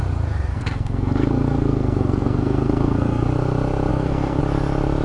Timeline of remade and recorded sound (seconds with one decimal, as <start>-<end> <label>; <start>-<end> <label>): 0.0-0.5 recorded; 0.5-3.3 remade; 3.3-3.9 recorded; 3.9-4.4 remade; 4.4-5.0 recorded